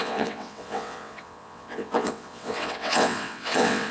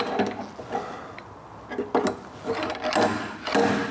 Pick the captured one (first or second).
second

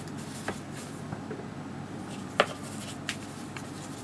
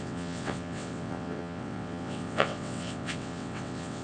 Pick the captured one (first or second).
first